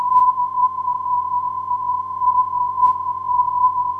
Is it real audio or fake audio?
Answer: fake